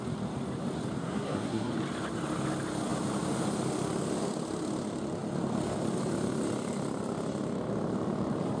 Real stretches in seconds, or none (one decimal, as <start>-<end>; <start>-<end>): 0.0-1.0; 1.7-8.6